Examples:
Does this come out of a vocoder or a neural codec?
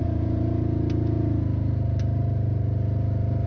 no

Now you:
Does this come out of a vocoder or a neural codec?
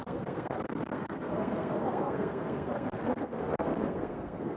yes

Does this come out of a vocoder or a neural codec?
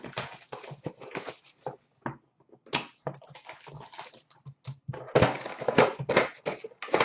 no